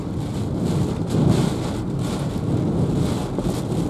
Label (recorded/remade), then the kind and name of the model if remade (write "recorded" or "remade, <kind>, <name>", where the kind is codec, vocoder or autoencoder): recorded